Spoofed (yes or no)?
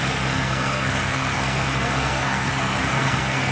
yes